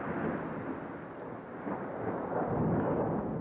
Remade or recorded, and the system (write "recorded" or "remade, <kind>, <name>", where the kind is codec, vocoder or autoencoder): recorded